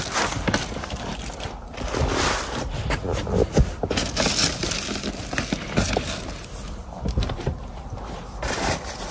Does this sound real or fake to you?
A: real